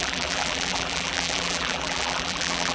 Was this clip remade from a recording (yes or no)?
yes